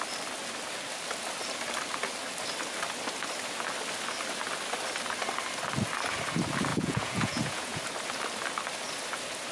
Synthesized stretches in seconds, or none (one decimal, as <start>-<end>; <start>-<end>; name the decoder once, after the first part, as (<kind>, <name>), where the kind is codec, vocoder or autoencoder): 6.7-7.8 (vocoder, Vocos)